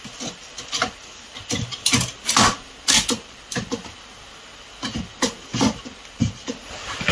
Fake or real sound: real